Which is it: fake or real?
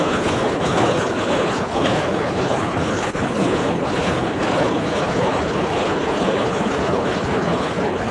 fake